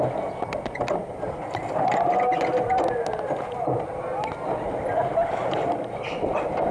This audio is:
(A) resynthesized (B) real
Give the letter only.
B